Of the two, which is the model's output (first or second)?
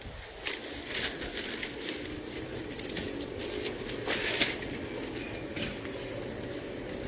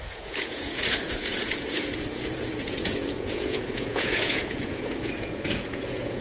second